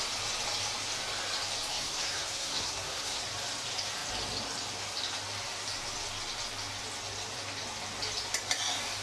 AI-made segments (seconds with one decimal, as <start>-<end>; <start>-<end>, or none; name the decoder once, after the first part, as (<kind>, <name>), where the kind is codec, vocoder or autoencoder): 1.7-3.2 (codec, SNAC)